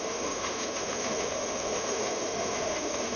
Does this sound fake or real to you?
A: fake